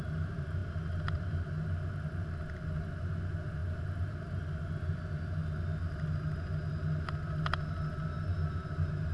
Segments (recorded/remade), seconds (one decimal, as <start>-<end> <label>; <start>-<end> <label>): 0.0-9.1 recorded